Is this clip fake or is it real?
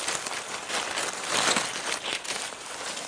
real